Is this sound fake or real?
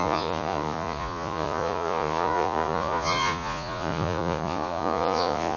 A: fake